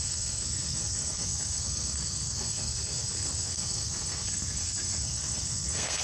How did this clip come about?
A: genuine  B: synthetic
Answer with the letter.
B